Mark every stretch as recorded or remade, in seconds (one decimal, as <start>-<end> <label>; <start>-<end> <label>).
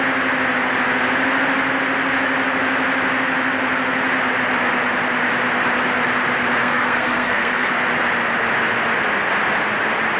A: 0.0-6.6 recorded; 6.6-7.7 remade; 7.7-10.2 recorded